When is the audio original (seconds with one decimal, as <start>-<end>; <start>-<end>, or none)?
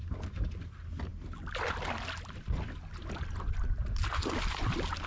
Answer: 0.0-5.1